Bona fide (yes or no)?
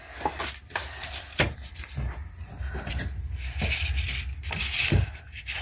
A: yes